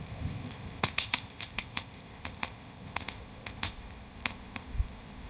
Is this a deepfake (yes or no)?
yes